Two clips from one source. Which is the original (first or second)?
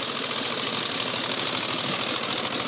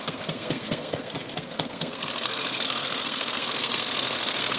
first